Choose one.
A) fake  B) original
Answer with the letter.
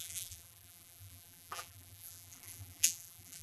A